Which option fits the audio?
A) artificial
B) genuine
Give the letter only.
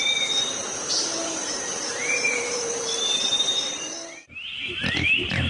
A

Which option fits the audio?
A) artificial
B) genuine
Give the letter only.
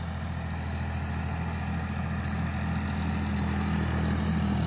B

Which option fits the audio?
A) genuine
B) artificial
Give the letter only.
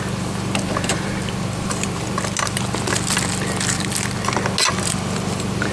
A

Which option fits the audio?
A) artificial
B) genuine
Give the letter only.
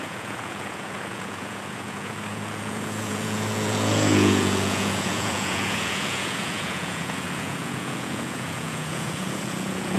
A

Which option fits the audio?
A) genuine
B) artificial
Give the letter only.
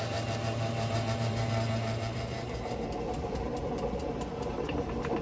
B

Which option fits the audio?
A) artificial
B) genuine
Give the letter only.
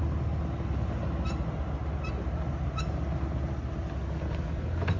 B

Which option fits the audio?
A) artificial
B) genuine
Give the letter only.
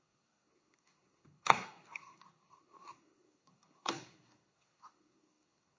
A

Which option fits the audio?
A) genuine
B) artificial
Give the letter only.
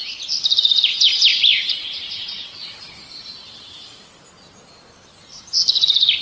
A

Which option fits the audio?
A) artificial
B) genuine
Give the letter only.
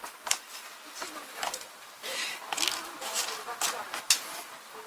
B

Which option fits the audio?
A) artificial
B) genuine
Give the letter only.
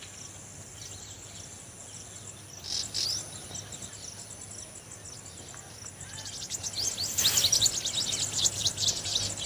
B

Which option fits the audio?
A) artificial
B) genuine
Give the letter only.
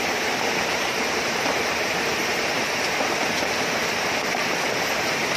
A